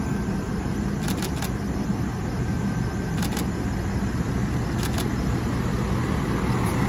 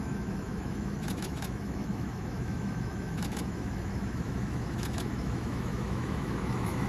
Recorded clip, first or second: first